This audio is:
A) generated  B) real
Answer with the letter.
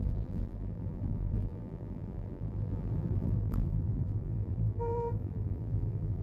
A